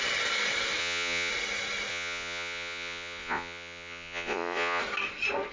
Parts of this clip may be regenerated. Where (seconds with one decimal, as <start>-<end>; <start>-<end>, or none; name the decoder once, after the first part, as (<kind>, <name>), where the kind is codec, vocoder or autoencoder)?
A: 0.8-1.3 (vocoder, Vocos); 1.9-4.8

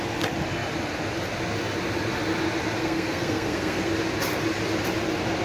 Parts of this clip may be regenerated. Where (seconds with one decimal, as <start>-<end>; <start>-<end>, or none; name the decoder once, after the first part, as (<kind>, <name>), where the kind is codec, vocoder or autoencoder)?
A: 2.8-3.9 (codec, SNAC)

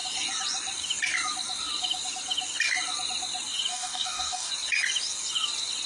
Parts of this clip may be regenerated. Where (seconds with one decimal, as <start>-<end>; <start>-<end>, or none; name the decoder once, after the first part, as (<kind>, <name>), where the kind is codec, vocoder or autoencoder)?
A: 3.7-4.5 (codec, DAC)

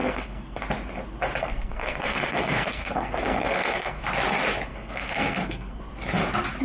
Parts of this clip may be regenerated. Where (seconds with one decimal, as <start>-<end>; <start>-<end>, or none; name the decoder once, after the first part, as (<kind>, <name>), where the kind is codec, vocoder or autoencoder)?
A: 0.0-0.6 (codec, SNAC); 1.4-4.0; 4.7-5.8

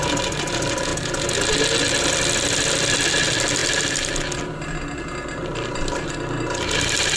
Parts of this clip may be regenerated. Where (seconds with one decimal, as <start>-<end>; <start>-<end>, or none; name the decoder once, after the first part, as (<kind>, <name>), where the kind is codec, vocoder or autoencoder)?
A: none

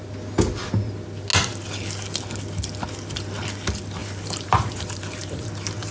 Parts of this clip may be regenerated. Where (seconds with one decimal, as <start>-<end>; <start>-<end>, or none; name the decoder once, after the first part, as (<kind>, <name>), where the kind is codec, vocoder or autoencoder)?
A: 4.0-5.5 (vocoder, BigVGAN v2)

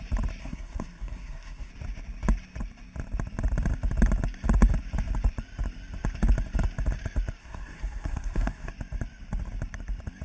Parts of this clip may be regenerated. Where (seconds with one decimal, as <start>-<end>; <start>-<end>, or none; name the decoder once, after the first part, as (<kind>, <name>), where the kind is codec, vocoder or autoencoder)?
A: 0.4-1.7 (codec, SNAC); 7.4-8.7